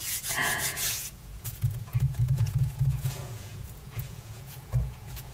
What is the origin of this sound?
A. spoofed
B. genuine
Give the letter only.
A